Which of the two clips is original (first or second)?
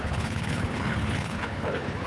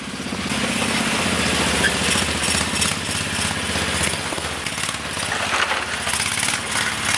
second